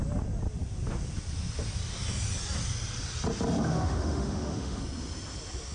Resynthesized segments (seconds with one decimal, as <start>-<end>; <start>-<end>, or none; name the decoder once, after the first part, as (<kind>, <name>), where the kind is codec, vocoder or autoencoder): 3.7-4.8 (autoencoder, DAC-VAE)